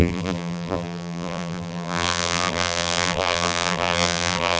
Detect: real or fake fake